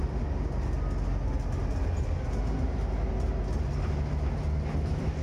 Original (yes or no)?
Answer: yes